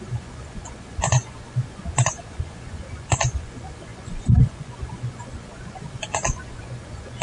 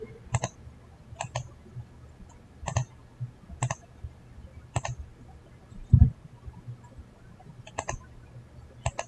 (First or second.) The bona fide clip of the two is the second